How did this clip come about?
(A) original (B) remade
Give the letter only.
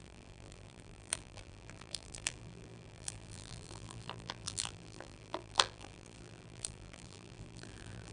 B